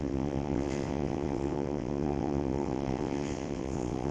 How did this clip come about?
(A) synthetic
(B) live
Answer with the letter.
A